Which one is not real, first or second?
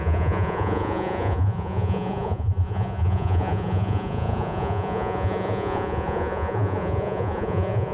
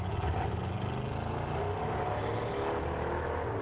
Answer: first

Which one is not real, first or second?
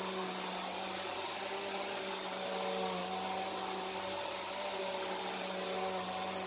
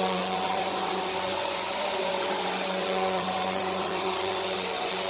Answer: second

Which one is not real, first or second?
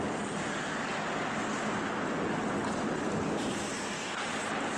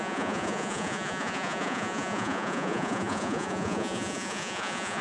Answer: second